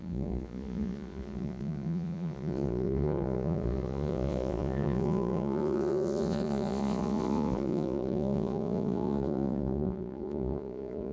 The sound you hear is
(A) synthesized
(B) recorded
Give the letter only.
A